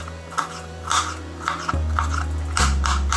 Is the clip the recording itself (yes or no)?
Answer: yes